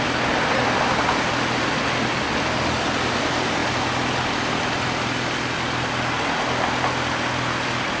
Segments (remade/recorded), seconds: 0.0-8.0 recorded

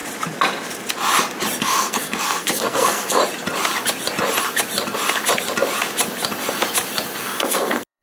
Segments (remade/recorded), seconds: 0.0-1.6 recorded; 1.6-3.2 remade; 3.2-7.2 recorded; 7.2-8.0 remade

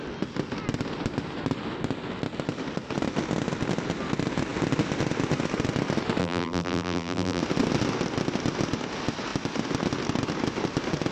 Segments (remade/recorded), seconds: 0.0-6.2 recorded; 6.2-7.4 remade; 7.4-11.1 recorded